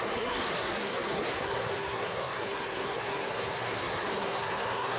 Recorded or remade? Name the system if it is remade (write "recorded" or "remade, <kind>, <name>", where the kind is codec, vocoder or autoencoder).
remade, codec, SNAC